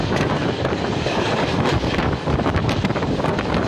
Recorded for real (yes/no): no